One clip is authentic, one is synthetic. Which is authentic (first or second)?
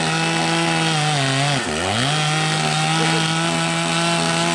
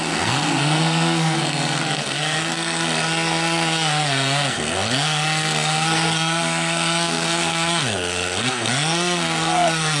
first